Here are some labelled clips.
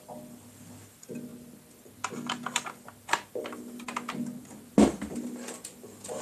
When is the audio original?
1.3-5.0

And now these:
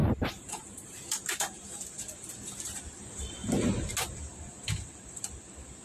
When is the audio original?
3.0-5.8

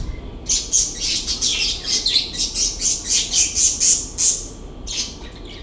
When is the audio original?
0.0-5.6

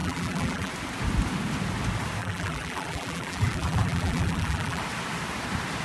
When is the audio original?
0.7-2.2; 4.8-5.8

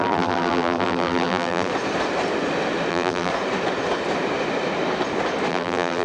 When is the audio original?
1.7-2.9; 3.3-5.5

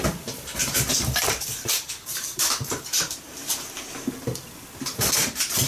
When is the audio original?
0.0-0.6; 3.5-5.7

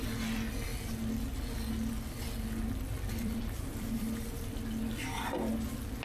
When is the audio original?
0.0-2.9; 5.5-6.0

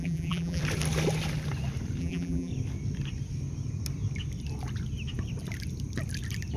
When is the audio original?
0.6-2.0; 2.5-6.6